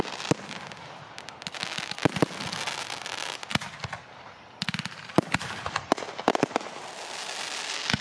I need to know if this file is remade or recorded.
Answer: recorded